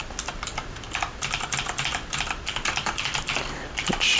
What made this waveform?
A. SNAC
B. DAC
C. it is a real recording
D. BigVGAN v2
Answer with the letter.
C